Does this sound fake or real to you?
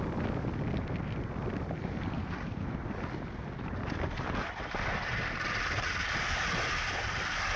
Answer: real